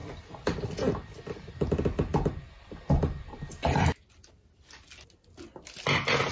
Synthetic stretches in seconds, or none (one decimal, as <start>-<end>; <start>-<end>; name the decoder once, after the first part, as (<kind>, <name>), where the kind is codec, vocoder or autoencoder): 3.6-4.3 (vocoder, BigVGAN v2)